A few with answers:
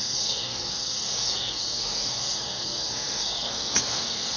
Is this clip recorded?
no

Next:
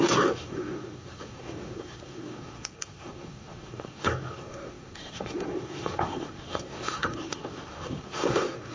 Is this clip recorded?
no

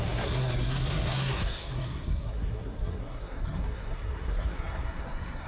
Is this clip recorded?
no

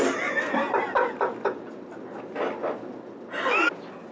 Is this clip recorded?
yes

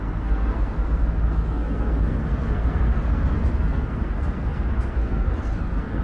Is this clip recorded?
no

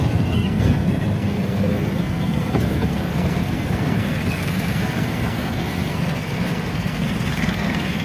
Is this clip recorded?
no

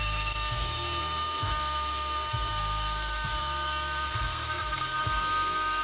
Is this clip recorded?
no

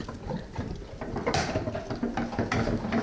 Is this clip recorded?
yes